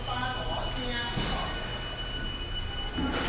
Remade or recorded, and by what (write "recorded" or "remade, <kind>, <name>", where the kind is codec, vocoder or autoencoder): recorded